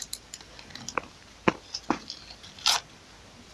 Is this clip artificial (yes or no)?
no